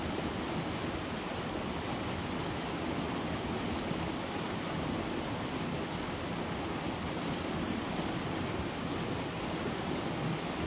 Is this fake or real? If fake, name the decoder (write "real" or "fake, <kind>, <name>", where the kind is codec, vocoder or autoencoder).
real